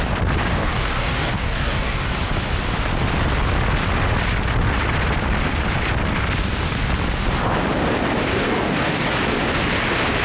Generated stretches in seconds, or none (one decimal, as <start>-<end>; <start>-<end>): 0.5-2.1; 8.3-9.1